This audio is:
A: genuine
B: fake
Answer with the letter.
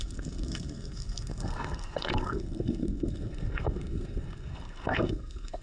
B